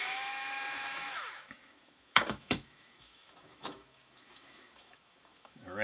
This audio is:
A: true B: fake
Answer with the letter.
B